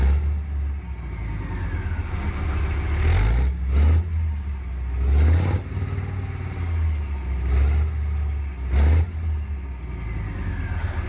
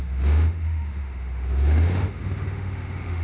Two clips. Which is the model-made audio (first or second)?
second